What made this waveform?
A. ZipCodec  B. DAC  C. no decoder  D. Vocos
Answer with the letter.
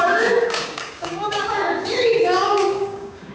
B